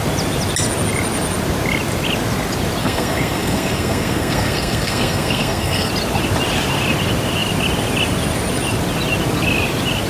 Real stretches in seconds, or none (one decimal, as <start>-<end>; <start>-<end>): 0.0-2.8; 5.9-10.1